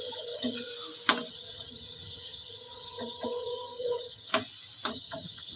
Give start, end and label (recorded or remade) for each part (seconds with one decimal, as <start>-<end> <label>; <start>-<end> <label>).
0.0-0.7 remade; 0.7-1.3 recorded; 1.3-4.3 remade; 4.3-4.9 recorded; 4.9-5.6 remade